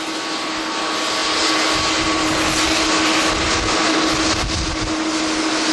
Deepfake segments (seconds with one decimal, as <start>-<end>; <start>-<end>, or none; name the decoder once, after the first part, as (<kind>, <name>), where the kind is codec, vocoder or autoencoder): none